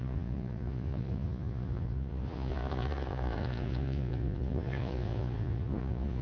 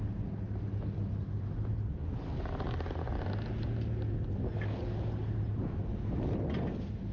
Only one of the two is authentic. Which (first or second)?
second